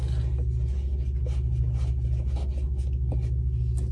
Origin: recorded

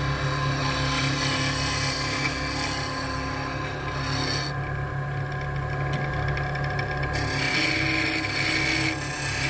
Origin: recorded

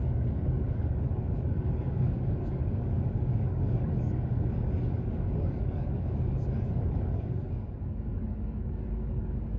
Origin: remade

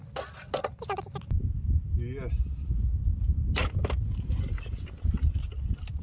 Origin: recorded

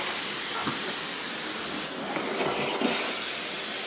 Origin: recorded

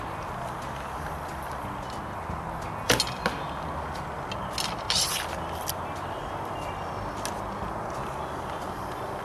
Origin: recorded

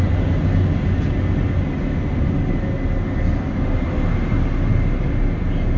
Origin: recorded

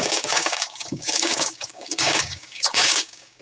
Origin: remade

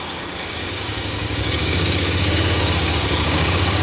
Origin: remade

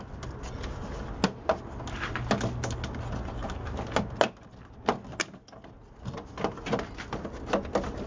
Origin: recorded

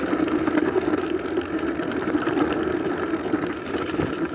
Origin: recorded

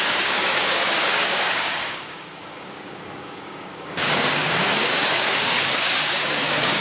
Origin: remade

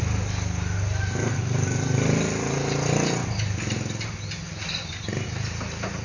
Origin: recorded